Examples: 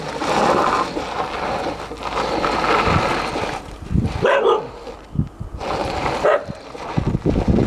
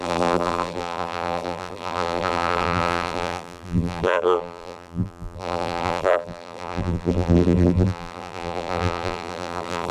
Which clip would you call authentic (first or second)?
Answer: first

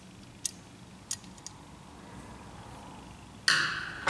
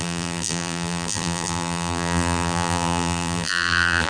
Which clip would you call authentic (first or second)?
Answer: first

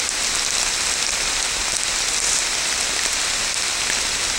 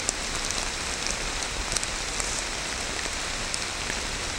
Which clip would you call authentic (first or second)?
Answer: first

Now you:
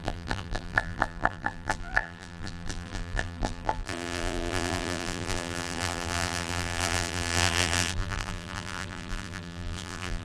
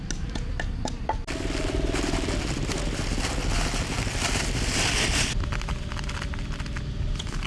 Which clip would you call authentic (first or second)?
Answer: second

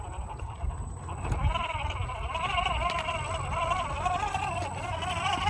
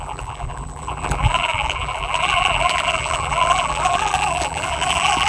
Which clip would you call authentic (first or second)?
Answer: first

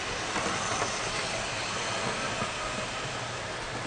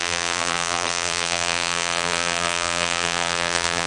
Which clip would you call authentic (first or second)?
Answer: first